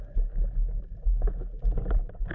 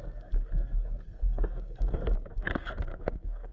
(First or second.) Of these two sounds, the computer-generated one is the second